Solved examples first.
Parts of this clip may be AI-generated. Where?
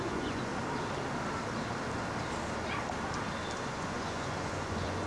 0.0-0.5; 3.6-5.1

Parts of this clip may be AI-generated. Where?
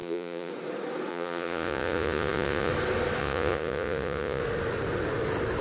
0.0-0.5; 1.1-2.7; 3.2-4.4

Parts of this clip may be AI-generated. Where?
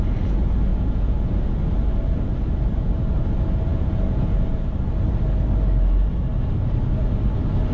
0.7-1.3; 3.7-4.7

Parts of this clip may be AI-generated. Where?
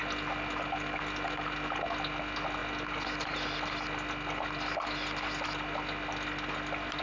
none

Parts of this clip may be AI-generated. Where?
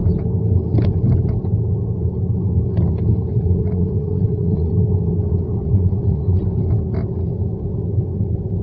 3.3-4.7; 5.6-6.4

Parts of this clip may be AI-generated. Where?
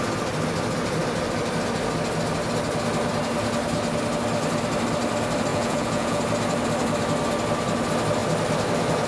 5.5-6.2